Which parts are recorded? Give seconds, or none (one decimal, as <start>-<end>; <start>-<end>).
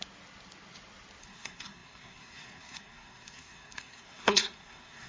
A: 0.0-1.2